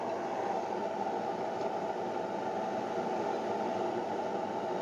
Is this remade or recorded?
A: recorded